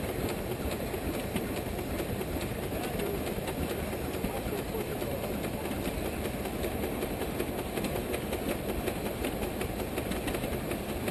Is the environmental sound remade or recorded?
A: recorded